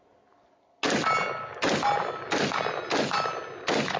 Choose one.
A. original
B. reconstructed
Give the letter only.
A